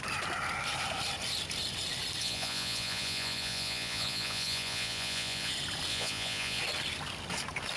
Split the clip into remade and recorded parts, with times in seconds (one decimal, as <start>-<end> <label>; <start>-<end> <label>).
0.0-2.2 recorded; 2.2-5.5 remade; 5.5-5.9 recorded; 5.9-6.6 remade; 6.6-7.8 recorded